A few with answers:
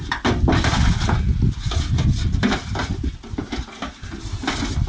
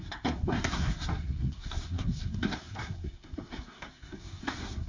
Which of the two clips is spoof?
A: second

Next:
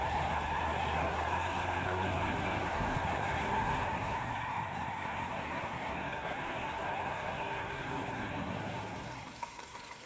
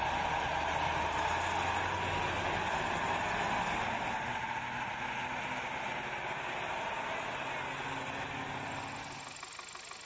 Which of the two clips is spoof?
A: first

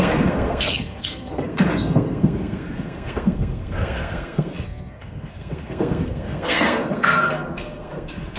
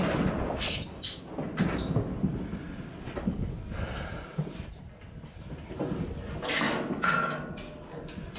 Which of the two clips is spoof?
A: first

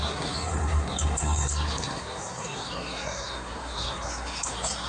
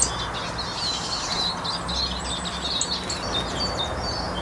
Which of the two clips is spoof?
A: first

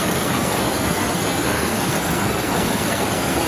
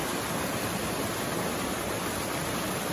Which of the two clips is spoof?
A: first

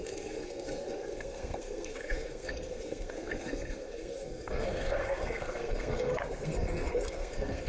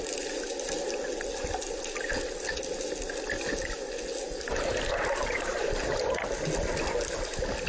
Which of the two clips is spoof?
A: first